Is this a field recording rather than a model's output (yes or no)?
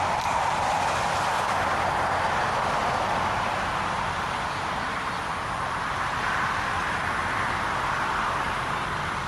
no